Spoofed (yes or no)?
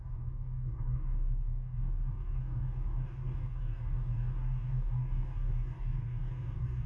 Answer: yes